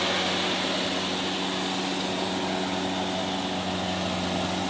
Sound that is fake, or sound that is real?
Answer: real